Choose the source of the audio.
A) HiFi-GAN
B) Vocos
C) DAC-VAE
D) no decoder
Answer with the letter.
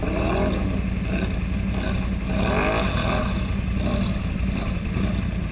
D